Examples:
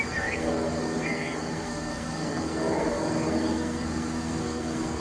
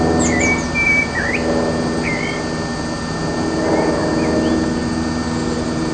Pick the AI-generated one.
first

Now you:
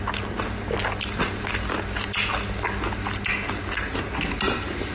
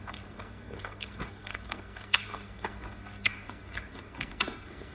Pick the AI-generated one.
second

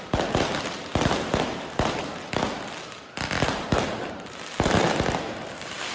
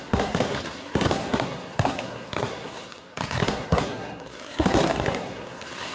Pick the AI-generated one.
second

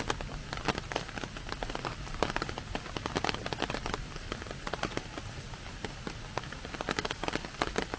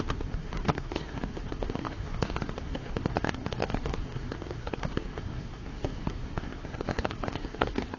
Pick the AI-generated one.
second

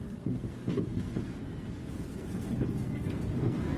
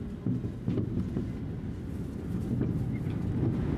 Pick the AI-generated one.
first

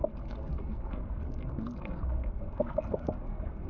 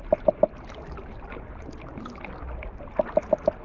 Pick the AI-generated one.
first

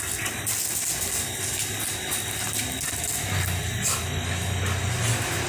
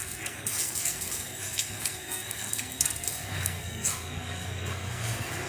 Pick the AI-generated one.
second